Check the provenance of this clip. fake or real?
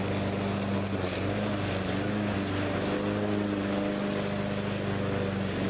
real